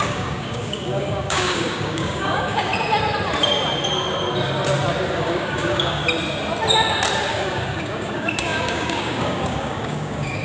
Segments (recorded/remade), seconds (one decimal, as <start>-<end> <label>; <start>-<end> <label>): 0.0-2.7 remade; 2.7-5.2 recorded; 5.2-6.0 remade; 6.0-7.3 recorded; 7.3-10.4 remade